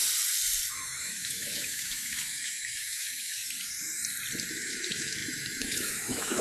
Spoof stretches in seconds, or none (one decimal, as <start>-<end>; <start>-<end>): 0.7-3.4; 4.5-6.4